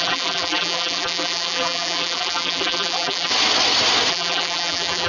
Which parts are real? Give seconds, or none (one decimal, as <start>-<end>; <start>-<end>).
3.3-4.1